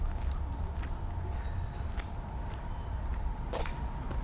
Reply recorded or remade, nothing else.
recorded